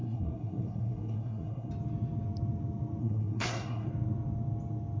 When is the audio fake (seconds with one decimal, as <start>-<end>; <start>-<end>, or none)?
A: 0.0-1.7; 3.0-3.9